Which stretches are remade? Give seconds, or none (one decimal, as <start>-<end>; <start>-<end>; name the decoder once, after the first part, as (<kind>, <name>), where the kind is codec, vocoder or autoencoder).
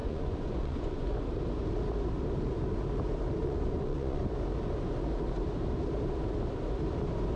0.0-1.2 (vocoder, Vocos); 3.4-4.2